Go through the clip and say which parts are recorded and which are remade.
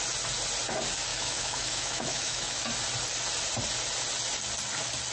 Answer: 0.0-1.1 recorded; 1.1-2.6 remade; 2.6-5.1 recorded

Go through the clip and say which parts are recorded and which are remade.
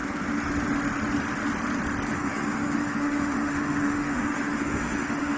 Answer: 0.0-2.1 recorded; 2.1-5.4 remade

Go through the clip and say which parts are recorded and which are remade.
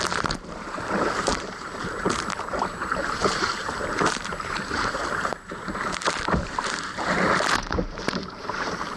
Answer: 0.0-9.0 remade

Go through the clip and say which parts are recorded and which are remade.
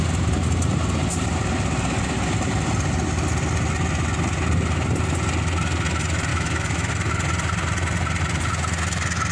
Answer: 0.0-6.3 recorded; 6.3-6.9 remade; 6.9-9.3 recorded